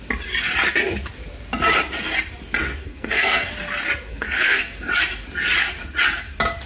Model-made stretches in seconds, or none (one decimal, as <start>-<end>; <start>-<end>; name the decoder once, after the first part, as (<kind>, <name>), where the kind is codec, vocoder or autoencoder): 2.8-3.5 (codec, SNAC); 4.1-4.6